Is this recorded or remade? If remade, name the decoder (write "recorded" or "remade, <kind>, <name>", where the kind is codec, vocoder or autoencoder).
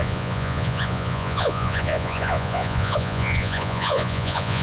remade, vocoder, Vocos